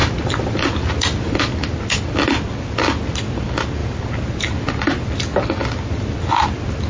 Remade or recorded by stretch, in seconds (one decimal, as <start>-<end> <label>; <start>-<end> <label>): 0.0-1.4 remade; 1.4-6.9 recorded